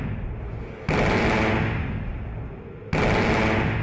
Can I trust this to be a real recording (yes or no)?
yes